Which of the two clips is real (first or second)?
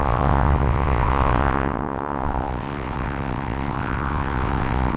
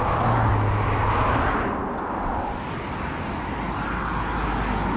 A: second